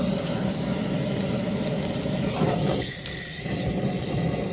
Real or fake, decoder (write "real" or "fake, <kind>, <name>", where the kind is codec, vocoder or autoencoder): real